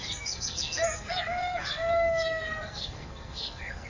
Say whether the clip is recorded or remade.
remade